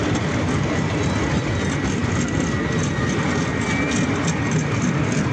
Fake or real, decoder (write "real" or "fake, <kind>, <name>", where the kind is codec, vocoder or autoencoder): real